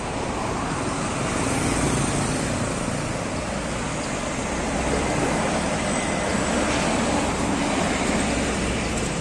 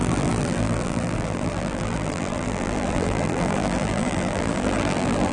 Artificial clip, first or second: second